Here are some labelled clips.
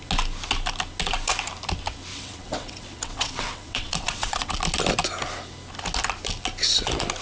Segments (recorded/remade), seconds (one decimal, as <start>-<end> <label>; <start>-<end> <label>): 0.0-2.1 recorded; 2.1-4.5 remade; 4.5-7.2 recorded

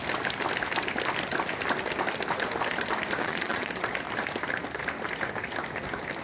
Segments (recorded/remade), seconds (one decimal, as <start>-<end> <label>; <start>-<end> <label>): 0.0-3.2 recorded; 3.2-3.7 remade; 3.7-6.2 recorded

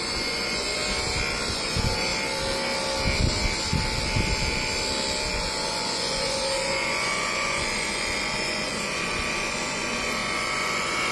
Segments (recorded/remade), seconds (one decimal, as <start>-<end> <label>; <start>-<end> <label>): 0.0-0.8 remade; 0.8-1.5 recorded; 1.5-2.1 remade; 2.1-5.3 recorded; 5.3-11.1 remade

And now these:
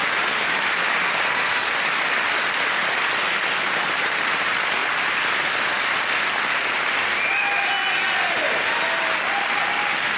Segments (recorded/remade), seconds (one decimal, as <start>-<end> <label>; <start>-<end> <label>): 0.0-10.2 recorded

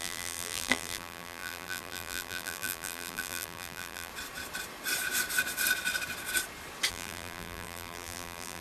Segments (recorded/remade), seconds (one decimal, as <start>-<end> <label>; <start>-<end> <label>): 0.0-4.1 remade; 4.1-6.9 recorded; 6.9-8.6 remade